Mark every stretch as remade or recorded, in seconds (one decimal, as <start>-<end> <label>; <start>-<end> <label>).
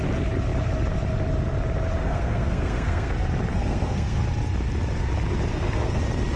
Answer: 0.0-2.0 recorded; 2.0-3.1 remade; 3.1-3.5 recorded; 3.5-4.2 remade; 4.2-5.5 recorded; 5.5-6.0 remade; 6.0-6.4 recorded